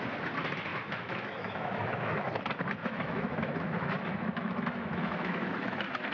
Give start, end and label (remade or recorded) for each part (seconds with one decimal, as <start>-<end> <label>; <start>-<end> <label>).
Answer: 0.0-0.7 recorded; 0.7-2.4 remade; 2.4-2.8 recorded; 2.8-6.1 remade